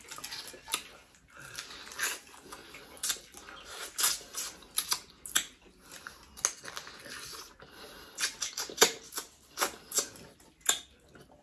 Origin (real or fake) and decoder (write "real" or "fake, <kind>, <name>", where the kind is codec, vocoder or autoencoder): real